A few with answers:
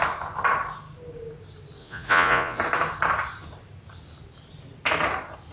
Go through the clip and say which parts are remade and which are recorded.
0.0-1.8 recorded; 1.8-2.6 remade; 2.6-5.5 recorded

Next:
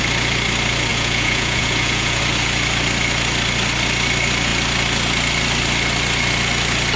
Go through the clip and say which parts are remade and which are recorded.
0.0-0.9 recorded; 0.9-2.2 remade; 2.2-7.0 recorded

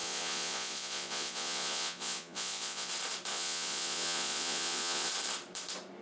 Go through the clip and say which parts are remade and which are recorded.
0.0-2.9 remade; 2.9-3.3 recorded; 3.3-5.1 remade; 5.1-6.0 recorded

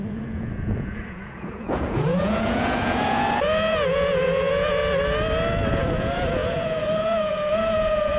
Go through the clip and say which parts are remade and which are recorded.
0.0-4.8 remade; 4.8-5.7 recorded; 5.7-8.2 remade

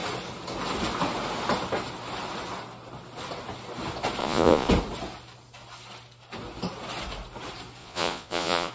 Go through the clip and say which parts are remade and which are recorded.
0.0-4.2 recorded; 4.2-4.7 remade; 4.7-7.8 recorded; 7.8-8.7 remade

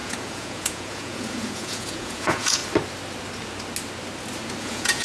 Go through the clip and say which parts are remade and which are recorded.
0.0-2.6 remade; 2.6-4.6 recorded; 4.6-5.0 remade

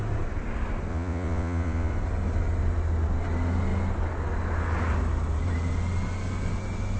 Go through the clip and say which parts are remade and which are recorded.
0.0-0.9 recorded; 0.9-1.9 remade; 1.9-7.0 recorded